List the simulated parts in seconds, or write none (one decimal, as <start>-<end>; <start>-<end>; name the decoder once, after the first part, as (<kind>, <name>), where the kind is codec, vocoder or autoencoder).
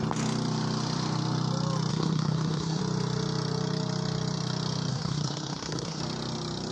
1.9-2.8 (codec, SNAC); 4.9-6.0